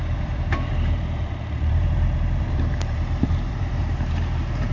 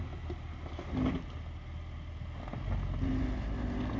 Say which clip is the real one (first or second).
second